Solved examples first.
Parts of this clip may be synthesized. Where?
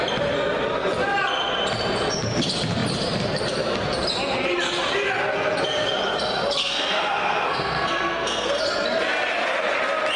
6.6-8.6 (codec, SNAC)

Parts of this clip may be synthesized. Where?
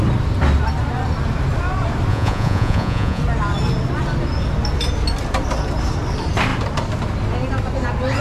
2.1-3.2 (vocoder, Vocos)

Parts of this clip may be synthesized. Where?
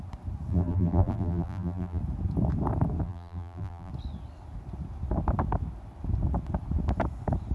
0.5-2.0 (vocoder, BigVGAN v2); 3.0-3.9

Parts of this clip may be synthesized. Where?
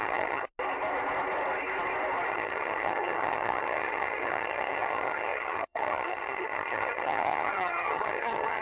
0.0-0.5 (vocoder, HiFi-GAN); 2.3-8.6